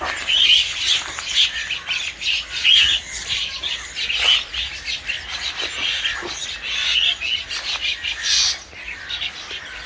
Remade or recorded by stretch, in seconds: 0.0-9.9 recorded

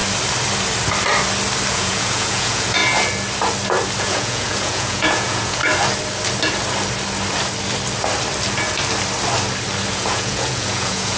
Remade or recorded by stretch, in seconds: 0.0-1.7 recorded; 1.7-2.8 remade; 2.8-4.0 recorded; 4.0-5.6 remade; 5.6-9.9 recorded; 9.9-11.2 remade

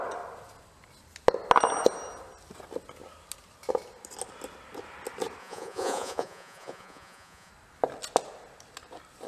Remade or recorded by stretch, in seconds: 0.0-5.4 recorded; 5.4-7.5 remade; 7.5-9.3 recorded

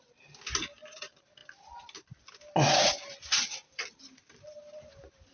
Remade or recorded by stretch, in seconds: 0.0-5.3 recorded

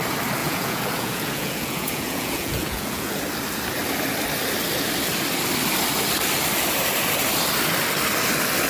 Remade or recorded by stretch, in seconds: 0.0-0.4 recorded; 0.4-3.2 remade; 3.2-8.7 recorded

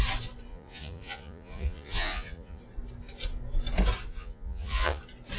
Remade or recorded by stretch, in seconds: 0.0-0.5 recorded; 0.5-2.6 remade; 2.6-4.1 recorded; 4.1-5.0 remade; 5.0-5.4 recorded

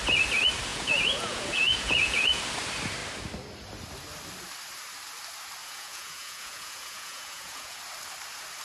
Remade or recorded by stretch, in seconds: 0.0-0.7 recorded; 0.7-2.4 remade; 2.4-5.6 recorded; 5.6-7.8 remade; 7.8-8.6 recorded

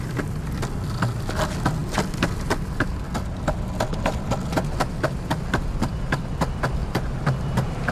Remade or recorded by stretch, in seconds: 0.0-7.9 recorded